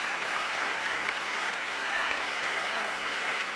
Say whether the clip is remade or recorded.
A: remade